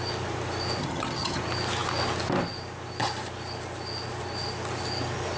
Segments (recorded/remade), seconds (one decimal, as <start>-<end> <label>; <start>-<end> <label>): 0.0-0.8 recorded; 0.8-1.4 remade; 1.4-5.4 recorded